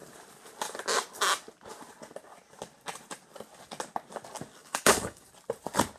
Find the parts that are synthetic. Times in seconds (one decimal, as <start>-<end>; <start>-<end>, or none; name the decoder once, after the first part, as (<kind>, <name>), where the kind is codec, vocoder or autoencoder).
4.6-5.3 (codec, DAC)